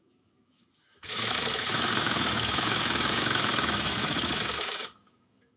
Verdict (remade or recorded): remade